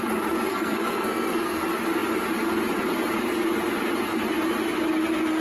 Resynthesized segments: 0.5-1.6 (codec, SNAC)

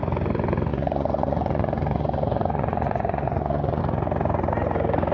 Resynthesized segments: 0.7-3.8 (vocoder, Vocos)